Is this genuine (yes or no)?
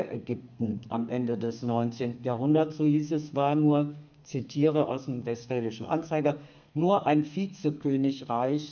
no